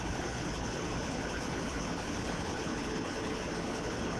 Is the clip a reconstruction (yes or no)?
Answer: yes